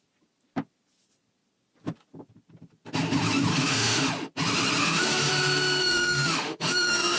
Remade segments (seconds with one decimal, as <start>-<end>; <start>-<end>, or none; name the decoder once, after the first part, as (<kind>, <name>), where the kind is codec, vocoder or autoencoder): 3.5-4.1 (autoencoder, DAC-VAE); 4.8-5.3; 5.8-7.2